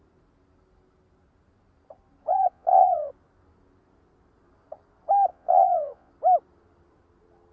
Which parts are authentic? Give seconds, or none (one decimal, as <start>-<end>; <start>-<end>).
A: 0.0-2.3; 3.1-5.3; 6.1-7.5